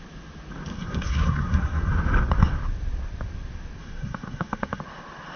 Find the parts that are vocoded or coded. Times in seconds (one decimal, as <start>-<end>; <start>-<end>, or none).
0.7-1.9; 3.8-4.8